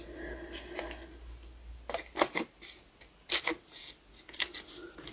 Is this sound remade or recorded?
recorded